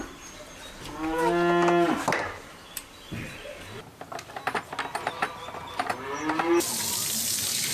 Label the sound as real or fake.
real